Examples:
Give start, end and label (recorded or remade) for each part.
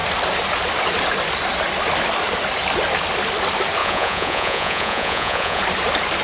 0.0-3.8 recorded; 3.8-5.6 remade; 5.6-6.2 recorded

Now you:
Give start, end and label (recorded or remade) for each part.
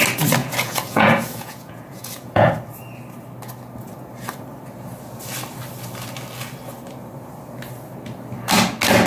0.0-0.4 recorded; 0.4-2.5 remade; 2.5-9.1 recorded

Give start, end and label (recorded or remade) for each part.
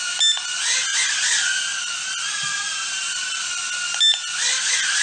0.0-0.9 recorded; 0.9-1.5 remade; 1.5-2.4 recorded; 2.4-3.4 remade; 3.4-5.0 recorded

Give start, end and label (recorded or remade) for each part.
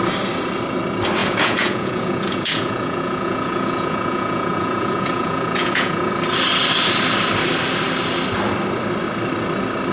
0.0-1.2 recorded; 1.2-6.1 remade; 6.1-9.9 recorded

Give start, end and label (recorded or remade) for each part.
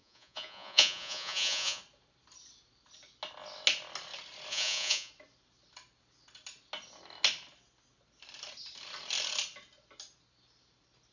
0.0-1.8 remade; 1.8-4.5 recorded; 4.5-5.1 remade; 5.1-11.1 recorded